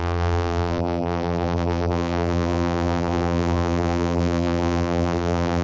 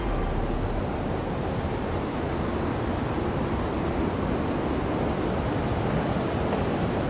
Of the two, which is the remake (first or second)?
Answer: first